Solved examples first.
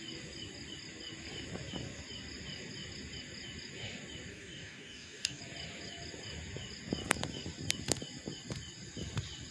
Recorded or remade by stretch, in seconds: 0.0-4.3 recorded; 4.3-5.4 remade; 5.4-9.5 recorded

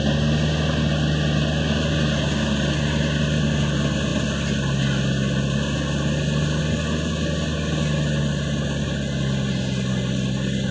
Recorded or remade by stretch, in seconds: 0.0-10.7 recorded

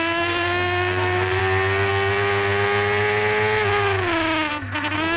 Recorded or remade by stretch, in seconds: 0.0-1.4 remade; 1.4-4.5 recorded; 4.5-5.2 remade

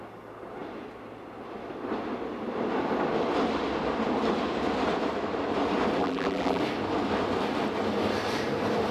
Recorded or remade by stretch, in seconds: 0.0-6.0 recorded; 6.0-6.6 remade; 6.6-8.9 recorded

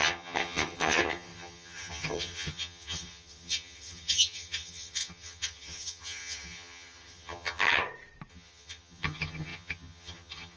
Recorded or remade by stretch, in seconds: 0.0-7.8 remade; 7.8-8.3 recorded; 8.3-10.6 remade

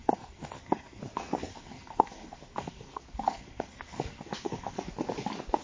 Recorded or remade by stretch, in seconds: 0.0-1.0 remade; 1.0-1.5 recorded; 1.5-4.9 remade; 4.9-5.6 recorded